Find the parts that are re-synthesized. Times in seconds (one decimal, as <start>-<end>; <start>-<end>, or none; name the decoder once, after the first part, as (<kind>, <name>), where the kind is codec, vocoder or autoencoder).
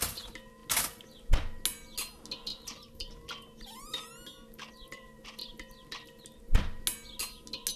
2.5-3.1 (vocoder, BigVGAN v2)